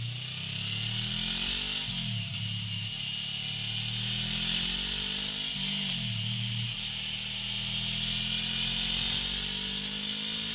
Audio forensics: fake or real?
real